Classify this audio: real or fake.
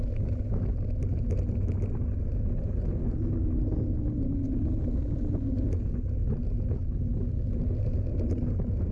real